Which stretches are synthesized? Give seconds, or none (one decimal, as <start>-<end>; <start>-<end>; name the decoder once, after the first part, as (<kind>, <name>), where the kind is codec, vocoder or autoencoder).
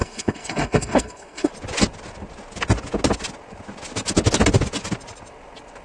0.0-1.5 (codec, SNAC)